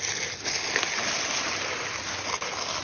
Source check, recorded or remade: recorded